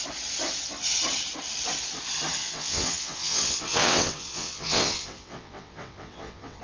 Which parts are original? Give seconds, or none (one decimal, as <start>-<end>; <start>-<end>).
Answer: 0.0-2.4